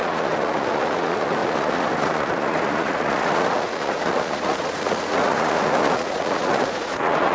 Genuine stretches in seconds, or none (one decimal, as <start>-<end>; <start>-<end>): none